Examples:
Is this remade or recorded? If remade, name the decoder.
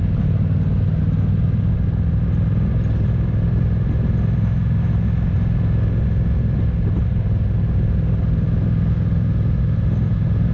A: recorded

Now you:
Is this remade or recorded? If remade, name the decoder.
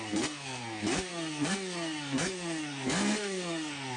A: remade, codec, SNAC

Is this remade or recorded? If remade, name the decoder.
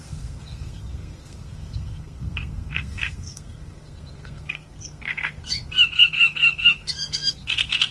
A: remade, codec, SNAC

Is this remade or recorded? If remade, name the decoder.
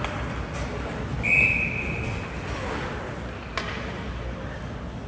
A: recorded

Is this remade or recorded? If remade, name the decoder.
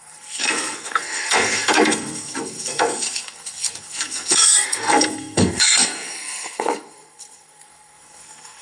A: remade, codec, SNAC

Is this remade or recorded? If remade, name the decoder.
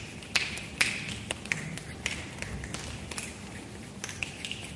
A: recorded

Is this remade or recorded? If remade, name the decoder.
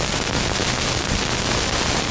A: recorded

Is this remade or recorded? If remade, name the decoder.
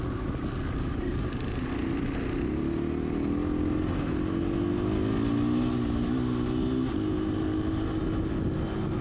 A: recorded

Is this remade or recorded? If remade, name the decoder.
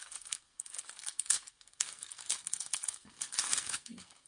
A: remade, codec, SNAC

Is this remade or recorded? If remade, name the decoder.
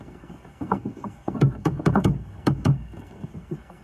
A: remade, codec, SNAC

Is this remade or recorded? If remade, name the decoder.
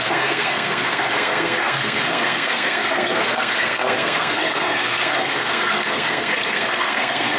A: remade, codec, SNAC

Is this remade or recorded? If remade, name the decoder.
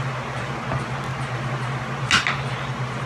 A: recorded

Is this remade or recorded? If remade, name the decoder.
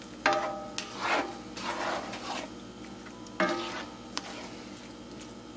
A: recorded